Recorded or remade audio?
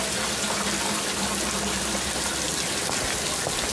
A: recorded